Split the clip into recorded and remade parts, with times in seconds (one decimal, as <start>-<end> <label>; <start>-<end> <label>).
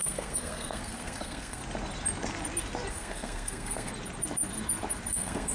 0.0-1.6 remade; 1.6-2.9 recorded; 2.9-3.9 remade; 3.9-5.1 recorded; 5.1-5.5 remade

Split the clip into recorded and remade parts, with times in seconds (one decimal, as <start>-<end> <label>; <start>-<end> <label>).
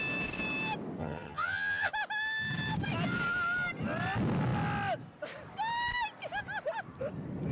0.0-1.0 recorded; 1.0-1.9 remade; 1.9-7.5 recorded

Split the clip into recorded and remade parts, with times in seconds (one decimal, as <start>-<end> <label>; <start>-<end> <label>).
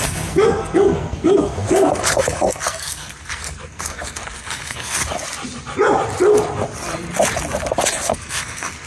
0.0-5.0 remade; 5.0-8.1 recorded; 8.1-8.9 remade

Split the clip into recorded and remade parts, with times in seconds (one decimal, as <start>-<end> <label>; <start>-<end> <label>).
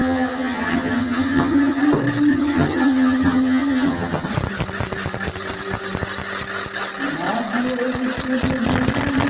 0.0-1.8 remade; 1.8-2.3 recorded; 2.3-4.3 remade; 4.3-9.3 recorded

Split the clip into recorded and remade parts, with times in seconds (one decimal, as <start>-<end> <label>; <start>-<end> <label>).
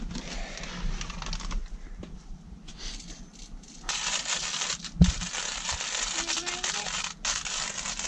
0.0-8.1 recorded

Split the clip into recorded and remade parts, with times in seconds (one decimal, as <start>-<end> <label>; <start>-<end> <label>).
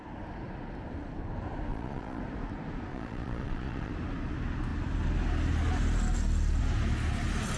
0.0-1.7 recorded; 1.7-2.2 remade; 2.2-2.9 recorded; 2.9-3.9 remade; 3.9-7.6 recorded